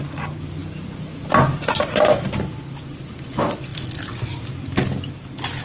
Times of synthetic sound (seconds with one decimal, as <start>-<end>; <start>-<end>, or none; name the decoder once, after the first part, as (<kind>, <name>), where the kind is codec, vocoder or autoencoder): none